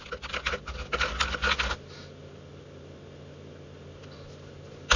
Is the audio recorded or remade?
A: recorded